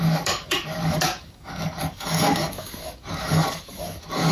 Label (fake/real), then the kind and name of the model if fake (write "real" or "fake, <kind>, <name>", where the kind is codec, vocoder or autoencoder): fake, codec, DAC